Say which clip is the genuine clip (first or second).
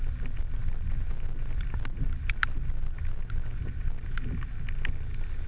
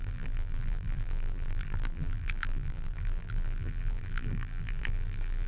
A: first